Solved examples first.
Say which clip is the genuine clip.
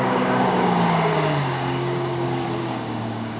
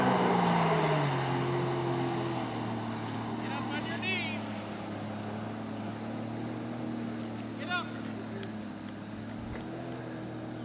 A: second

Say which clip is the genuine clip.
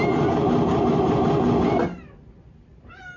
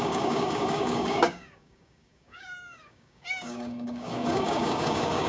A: first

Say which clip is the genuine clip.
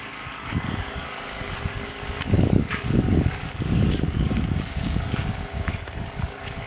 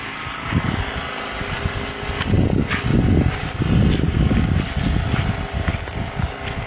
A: second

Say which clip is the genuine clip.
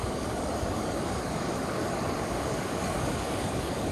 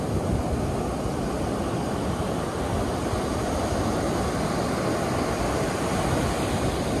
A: second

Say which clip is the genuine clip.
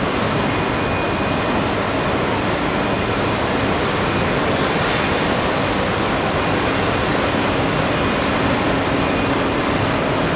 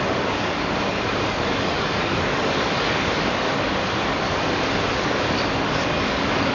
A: first